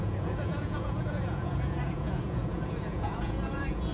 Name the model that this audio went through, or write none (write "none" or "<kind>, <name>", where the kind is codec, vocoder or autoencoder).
vocoder, Vocos